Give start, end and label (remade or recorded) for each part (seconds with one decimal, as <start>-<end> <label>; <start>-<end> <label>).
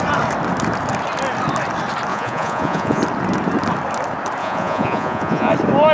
0.0-2.1 recorded; 2.1-3.0 remade; 3.0-4.4 recorded; 4.4-5.5 remade; 5.5-5.9 recorded